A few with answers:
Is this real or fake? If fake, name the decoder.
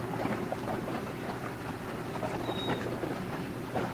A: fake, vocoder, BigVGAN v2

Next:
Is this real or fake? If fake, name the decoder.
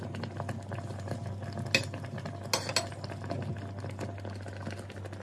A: real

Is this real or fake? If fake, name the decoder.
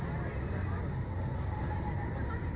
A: real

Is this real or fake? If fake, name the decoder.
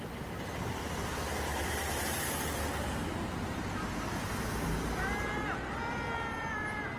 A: real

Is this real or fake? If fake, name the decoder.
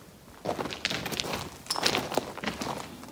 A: real